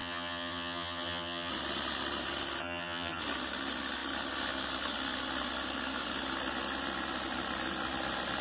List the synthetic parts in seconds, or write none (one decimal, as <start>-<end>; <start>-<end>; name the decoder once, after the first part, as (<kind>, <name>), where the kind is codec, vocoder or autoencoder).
0.0-1.5 (vocoder, HiFi-GAN); 2.6-3.2